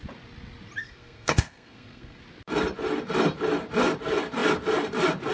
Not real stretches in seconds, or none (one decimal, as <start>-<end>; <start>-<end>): 0.8-2.2